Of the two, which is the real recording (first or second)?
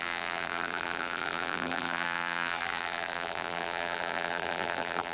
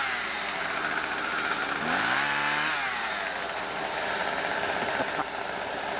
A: second